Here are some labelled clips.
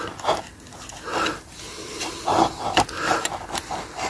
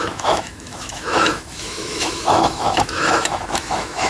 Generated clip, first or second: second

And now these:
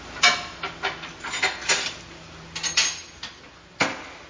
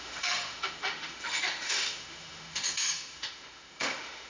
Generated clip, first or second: second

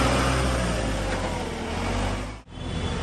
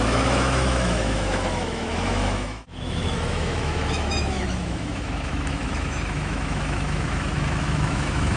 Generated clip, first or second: second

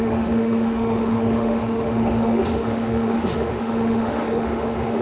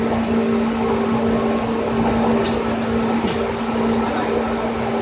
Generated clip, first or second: first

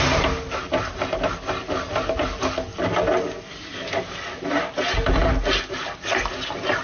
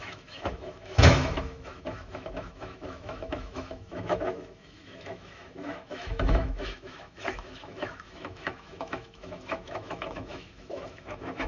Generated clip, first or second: second